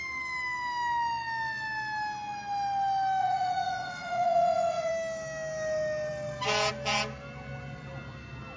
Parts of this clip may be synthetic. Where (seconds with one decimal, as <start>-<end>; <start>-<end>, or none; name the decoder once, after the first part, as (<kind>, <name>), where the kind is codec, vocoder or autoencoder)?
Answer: 3.2-4.9 (vocoder, Vocos)